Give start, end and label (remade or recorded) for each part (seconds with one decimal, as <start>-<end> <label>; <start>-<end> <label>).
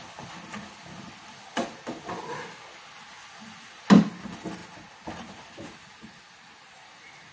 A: 0.0-7.3 recorded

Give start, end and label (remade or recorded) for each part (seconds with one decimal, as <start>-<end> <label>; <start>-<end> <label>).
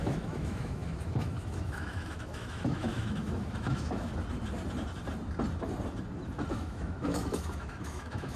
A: 0.0-4.1 remade; 4.1-6.5 recorded; 6.5-8.4 remade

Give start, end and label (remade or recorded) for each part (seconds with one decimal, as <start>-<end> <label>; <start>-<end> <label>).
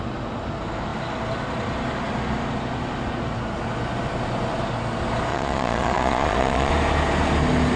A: 0.0-5.3 recorded; 5.3-6.7 remade; 6.7-7.8 recorded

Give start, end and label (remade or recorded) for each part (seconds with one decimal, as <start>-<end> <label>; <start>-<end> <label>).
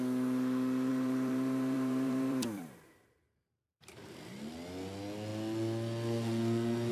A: 0.0-0.9 recorded; 0.9-4.4 remade; 4.4-6.9 recorded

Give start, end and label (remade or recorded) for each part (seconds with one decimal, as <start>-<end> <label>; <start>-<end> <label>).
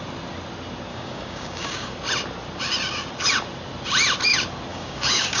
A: 0.0-0.9 recorded; 0.9-1.9 remade; 1.9-4.7 recorded; 4.7-5.4 remade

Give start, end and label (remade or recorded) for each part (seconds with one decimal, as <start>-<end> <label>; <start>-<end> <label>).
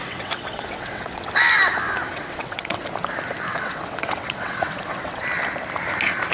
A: 0.0-1.3 remade; 1.3-2.1 recorded; 2.1-2.8 remade; 2.8-3.5 recorded; 3.5-5.2 remade; 5.2-6.3 recorded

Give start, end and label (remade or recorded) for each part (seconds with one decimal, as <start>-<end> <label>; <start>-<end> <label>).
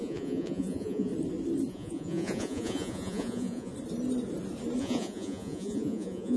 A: 0.0-1.1 remade; 1.1-1.7 recorded; 1.7-3.7 remade; 3.7-4.8 recorded; 4.8-6.4 remade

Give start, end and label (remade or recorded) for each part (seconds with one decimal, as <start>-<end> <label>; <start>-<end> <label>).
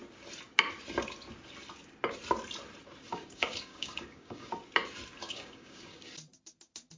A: 0.0-3.1 recorded; 3.1-4.5 remade; 4.5-5.2 recorded; 5.2-6.1 remade; 6.1-7.0 recorded